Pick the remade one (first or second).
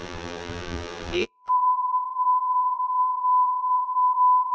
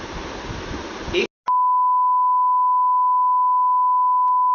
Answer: first